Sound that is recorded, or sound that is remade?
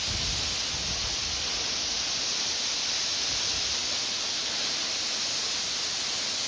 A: recorded